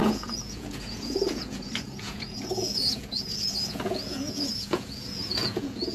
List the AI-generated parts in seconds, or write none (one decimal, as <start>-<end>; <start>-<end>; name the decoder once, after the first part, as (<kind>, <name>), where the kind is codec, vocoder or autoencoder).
0.0-5.9 (vocoder, Vocos)